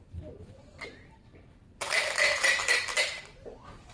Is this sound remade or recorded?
remade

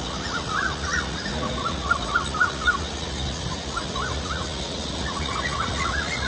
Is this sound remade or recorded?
remade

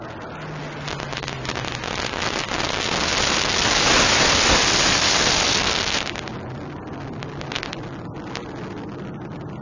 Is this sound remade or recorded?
recorded